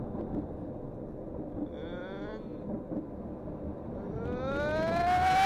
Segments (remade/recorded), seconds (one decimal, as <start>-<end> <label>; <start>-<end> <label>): 0.0-5.5 recorded